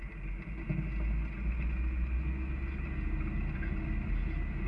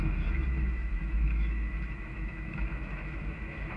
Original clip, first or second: first